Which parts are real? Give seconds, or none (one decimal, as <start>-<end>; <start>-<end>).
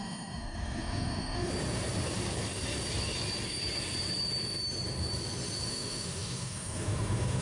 1.5-5.7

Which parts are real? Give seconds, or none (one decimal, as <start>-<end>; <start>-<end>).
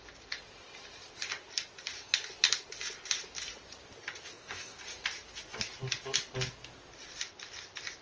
0.0-4.3; 4.8-8.0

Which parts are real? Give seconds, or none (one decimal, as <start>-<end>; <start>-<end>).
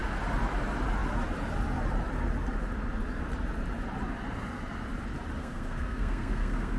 0.0-5.4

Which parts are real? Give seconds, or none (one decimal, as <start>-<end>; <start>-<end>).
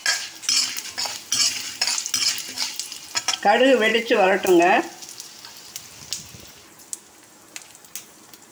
0.0-3.9; 4.8-8.5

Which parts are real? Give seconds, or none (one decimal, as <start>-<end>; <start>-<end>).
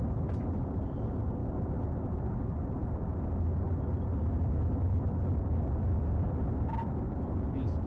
0.0-7.9